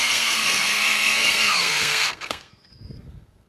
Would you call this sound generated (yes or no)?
yes